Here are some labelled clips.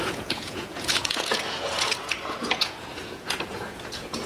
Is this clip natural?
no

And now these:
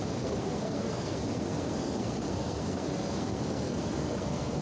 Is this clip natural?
no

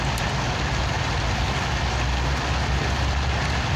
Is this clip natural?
yes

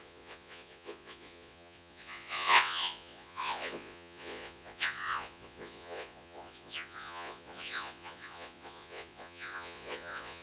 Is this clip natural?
no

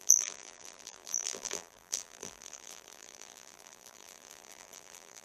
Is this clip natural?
no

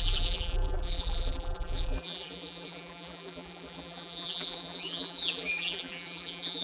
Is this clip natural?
no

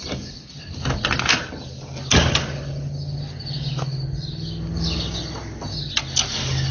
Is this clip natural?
yes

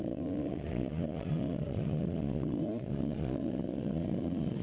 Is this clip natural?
no